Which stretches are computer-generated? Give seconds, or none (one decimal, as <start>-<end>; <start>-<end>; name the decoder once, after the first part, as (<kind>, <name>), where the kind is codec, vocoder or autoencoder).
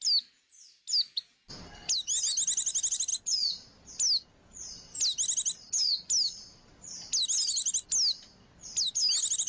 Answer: none